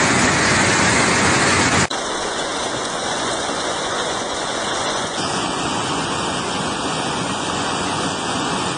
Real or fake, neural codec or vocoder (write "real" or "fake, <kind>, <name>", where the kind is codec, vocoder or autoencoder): fake, vocoder, Vocos